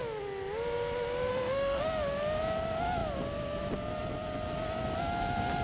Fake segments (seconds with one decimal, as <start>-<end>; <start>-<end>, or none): 1.3-1.8